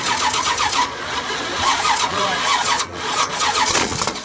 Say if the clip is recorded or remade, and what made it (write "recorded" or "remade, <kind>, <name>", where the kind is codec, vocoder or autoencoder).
remade, vocoder, Vocos